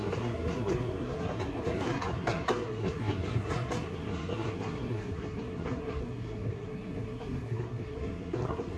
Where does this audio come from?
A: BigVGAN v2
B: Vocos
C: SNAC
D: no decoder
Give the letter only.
C